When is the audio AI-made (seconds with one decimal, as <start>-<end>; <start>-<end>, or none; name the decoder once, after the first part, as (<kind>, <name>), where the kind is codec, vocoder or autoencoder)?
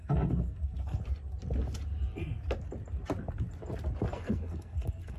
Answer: 0.0-1.0 (codec, SNAC); 4.1-5.2